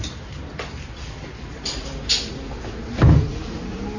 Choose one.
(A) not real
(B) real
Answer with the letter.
B